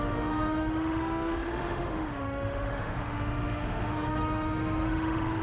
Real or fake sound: fake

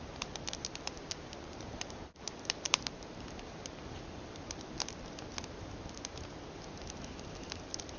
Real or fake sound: fake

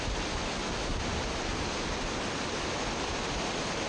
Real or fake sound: real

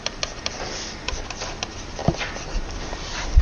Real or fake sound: real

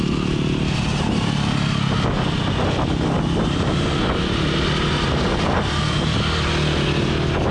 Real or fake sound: real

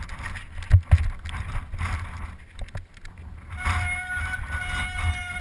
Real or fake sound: real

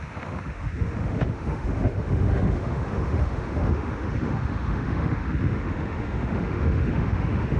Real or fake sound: fake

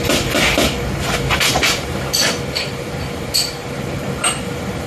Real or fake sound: fake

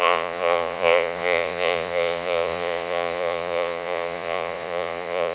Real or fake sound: fake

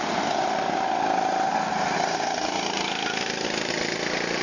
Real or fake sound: real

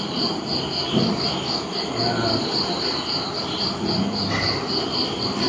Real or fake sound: fake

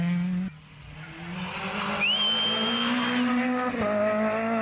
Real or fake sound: real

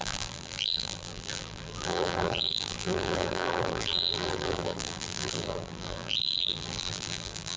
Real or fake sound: fake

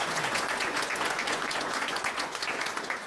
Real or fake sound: fake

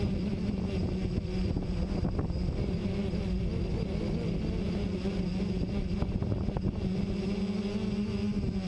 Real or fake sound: real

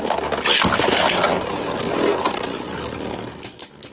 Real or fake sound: real